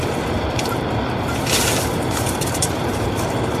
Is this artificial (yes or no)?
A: yes